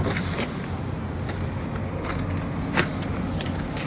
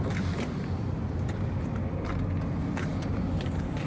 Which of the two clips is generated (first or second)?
second